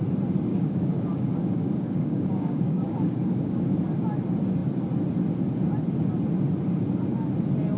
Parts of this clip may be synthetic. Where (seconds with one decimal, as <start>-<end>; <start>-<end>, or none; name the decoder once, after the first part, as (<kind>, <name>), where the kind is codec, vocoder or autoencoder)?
0.5-3.6 (codec, DAC)